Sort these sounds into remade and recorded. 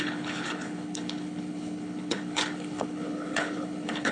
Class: remade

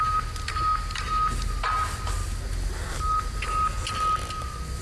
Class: recorded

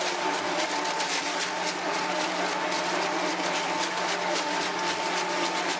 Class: recorded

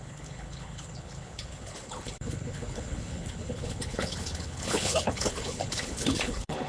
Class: remade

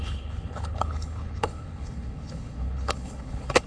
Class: remade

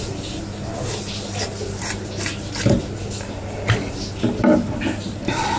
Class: recorded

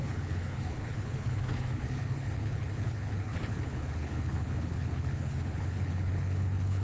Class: remade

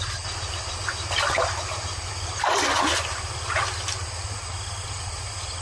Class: recorded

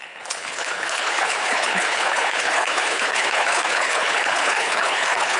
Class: remade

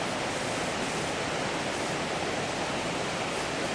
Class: recorded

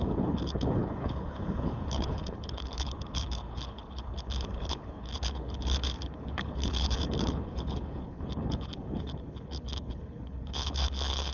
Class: remade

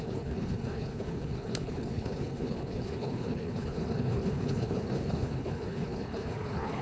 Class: remade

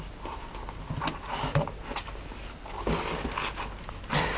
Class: recorded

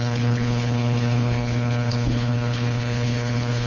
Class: remade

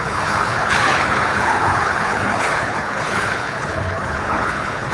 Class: remade